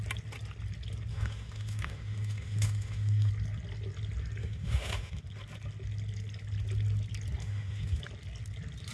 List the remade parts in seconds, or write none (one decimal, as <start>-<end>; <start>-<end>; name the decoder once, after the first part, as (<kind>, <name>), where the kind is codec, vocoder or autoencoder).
1.1-3.3 (autoencoder, DAC-VAE); 4.4-5.2; 7.4-8.0